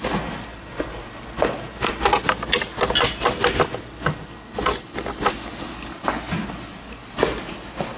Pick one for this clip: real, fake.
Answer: real